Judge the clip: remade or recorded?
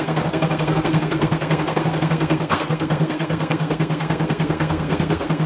remade